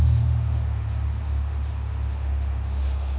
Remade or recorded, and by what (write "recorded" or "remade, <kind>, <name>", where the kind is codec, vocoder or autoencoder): remade, autoencoder, DAC-VAE